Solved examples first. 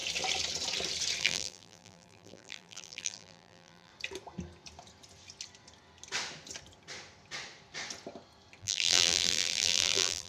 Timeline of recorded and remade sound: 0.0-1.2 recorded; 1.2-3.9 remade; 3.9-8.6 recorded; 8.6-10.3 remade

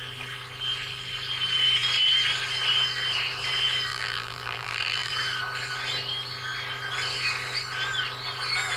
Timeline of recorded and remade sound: 0.0-3.9 recorded; 3.9-5.1 remade; 5.1-8.8 recorded

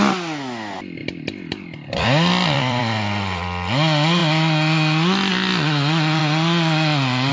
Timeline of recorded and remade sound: 0.0-1.0 recorded; 1.0-2.8 remade; 2.8-7.3 recorded